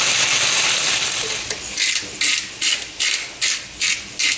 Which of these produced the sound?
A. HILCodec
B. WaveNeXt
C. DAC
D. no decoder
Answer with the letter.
D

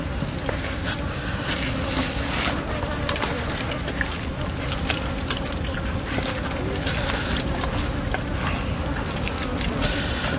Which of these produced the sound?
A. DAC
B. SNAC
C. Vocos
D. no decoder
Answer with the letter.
D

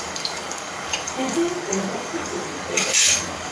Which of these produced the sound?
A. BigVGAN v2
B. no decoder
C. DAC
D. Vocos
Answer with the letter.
C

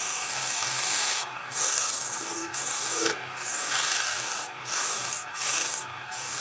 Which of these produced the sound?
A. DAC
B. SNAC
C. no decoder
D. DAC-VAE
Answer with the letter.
A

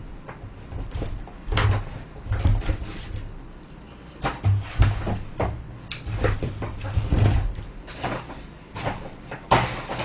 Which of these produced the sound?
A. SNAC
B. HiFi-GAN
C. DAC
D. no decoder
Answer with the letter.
D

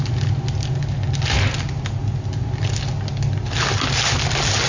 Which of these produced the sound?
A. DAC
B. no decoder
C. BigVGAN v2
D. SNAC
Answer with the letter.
B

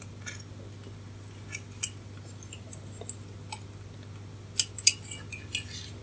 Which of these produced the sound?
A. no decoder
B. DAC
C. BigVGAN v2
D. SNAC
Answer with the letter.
A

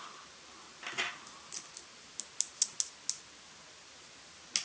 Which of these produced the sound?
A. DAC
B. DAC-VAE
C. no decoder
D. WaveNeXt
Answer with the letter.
C